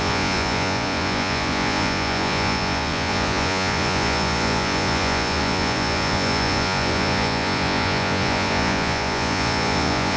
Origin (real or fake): fake